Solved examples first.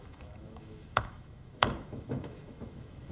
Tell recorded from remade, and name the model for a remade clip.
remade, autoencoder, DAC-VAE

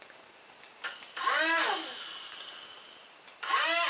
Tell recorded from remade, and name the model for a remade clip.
recorded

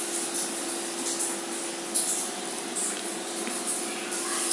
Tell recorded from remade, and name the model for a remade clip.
recorded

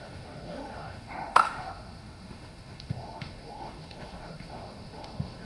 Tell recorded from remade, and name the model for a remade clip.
remade, autoencoder, DAC-VAE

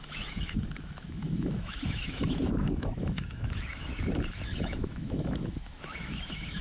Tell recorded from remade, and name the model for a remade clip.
remade, autoencoder, DAC-VAE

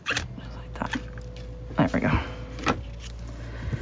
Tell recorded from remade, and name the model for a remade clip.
recorded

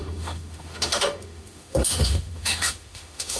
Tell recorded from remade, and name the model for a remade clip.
remade, autoencoder, DAC-VAE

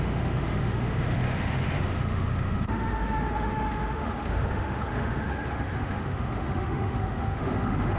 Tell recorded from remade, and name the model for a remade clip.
remade, autoencoder, DAC-VAE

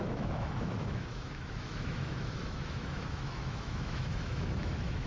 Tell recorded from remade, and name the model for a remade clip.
remade, autoencoder, DAC-VAE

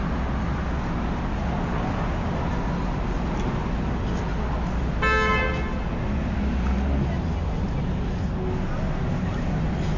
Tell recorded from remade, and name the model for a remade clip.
recorded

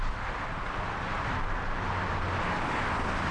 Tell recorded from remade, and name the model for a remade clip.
recorded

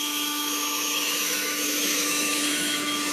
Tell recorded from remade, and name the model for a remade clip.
remade, autoencoder, DAC-VAE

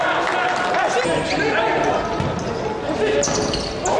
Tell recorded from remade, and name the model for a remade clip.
recorded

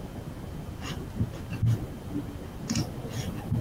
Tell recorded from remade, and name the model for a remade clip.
recorded